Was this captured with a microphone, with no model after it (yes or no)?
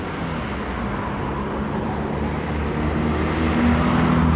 yes